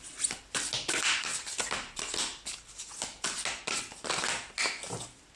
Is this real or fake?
real